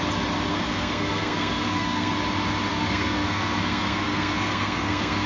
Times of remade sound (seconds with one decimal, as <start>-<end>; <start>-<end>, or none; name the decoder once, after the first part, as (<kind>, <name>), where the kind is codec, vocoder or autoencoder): 0.5-2.1 (codec, SNAC); 2.7-5.3